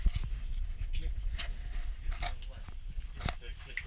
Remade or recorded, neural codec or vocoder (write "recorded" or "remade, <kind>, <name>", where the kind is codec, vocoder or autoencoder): recorded